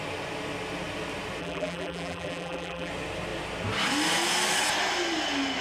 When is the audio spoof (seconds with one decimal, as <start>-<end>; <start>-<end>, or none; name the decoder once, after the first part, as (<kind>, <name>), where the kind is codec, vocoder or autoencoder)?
1.4-2.9 (vocoder, BigVGAN v2)